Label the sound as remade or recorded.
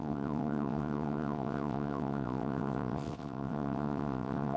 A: remade